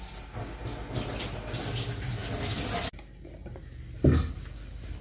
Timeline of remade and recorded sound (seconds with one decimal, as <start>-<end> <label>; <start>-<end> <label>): 0.0-5.0 recorded